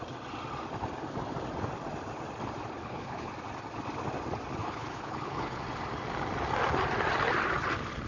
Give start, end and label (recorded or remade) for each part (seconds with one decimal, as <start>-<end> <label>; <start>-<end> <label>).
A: 0.0-2.8 recorded; 2.8-3.3 remade; 3.3-4.6 recorded; 4.6-5.6 remade; 5.6-8.1 recorded